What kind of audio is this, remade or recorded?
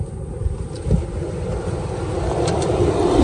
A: recorded